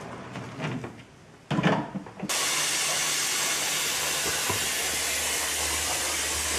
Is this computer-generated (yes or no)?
no